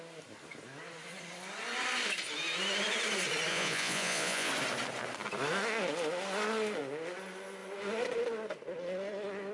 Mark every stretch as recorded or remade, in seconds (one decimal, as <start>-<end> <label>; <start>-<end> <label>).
0.0-3.5 recorded; 3.5-4.5 remade; 4.5-9.5 recorded

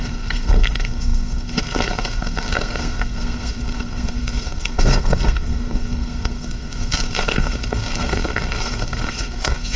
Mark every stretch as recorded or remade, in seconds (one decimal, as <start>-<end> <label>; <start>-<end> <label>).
0.0-9.8 remade

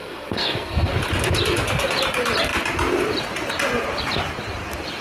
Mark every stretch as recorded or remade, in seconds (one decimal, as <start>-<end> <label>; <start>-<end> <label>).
0.0-0.9 remade; 0.9-5.0 recorded

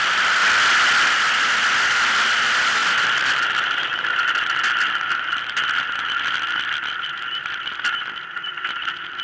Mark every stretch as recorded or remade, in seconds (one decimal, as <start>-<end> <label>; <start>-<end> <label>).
0.0-0.4 remade; 0.4-1.1 recorded; 1.1-9.2 remade